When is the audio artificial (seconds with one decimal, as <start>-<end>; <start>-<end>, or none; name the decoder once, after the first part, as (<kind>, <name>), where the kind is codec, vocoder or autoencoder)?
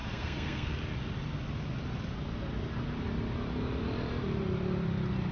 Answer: 0.0-0.7 (codec, SNAC)